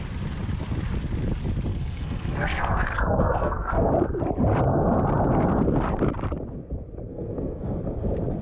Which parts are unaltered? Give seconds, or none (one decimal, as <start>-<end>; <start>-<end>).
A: 0.0-1.7; 3.9-7.1; 7.8-8.4